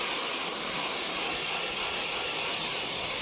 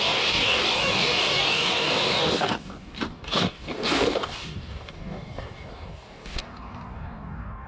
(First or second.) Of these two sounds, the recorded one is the first